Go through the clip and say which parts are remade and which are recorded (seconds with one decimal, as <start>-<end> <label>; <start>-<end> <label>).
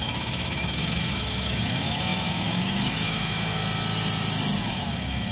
0.0-3.6 remade; 3.6-4.6 recorded; 4.6-5.3 remade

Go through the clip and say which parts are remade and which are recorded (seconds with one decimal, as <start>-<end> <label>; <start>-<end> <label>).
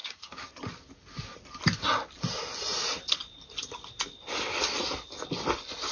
0.0-0.5 remade; 0.5-5.9 recorded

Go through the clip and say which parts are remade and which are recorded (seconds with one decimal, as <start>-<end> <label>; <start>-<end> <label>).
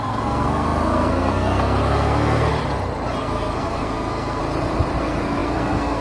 0.0-2.5 remade; 2.5-3.2 recorded; 3.2-4.4 remade; 4.4-5.0 recorded; 5.0-6.0 remade